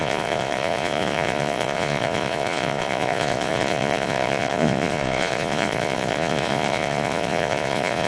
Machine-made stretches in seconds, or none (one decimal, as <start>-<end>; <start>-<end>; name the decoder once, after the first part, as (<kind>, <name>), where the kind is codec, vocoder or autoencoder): 0.0-8.1 (vocoder, Vocos)